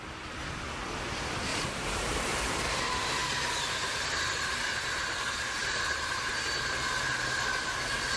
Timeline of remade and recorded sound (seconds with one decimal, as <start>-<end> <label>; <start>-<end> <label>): 0.0-1.5 recorded; 1.5-2.6 remade; 2.6-3.2 recorded; 3.2-3.9 remade; 3.9-5.6 recorded; 5.6-6.3 remade; 6.3-8.2 recorded